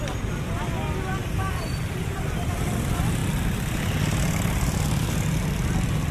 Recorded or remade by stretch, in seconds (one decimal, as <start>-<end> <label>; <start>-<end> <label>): 0.0-6.1 recorded